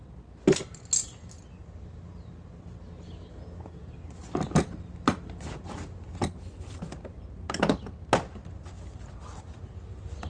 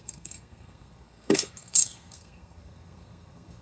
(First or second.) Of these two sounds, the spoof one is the second